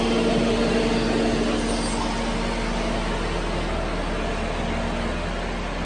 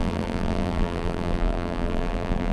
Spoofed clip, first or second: second